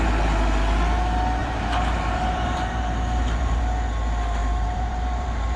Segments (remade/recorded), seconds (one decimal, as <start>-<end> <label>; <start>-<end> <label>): 0.0-1.4 recorded; 1.4-3.6 remade; 3.6-4.4 recorded; 4.4-5.6 remade

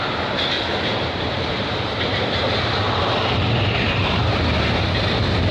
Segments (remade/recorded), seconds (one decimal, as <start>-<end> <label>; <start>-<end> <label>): 0.0-0.9 recorded; 0.9-4.2 remade; 4.2-5.5 recorded

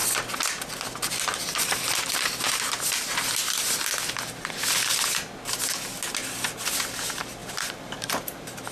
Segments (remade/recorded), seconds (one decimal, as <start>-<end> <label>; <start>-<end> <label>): 0.0-7.4 recorded; 7.4-8.1 remade; 8.1-8.7 recorded

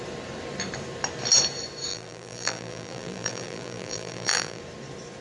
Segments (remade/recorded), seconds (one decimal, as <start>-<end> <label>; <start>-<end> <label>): 0.0-1.9 recorded; 1.9-4.6 remade; 4.6-5.2 recorded

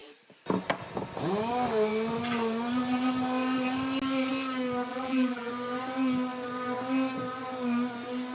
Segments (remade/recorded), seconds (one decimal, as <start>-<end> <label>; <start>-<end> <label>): 0.0-4.9 recorded; 4.9-5.5 remade; 5.5-8.3 recorded